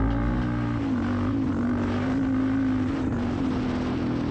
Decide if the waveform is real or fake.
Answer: real